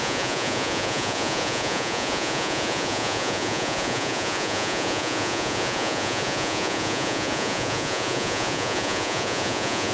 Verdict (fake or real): fake